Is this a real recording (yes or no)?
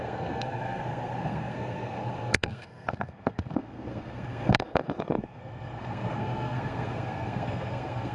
no